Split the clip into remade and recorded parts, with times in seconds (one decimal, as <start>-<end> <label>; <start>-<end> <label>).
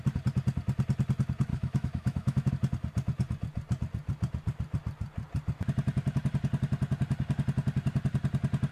0.0-1.5 recorded; 1.5-2.5 remade; 2.5-8.7 recorded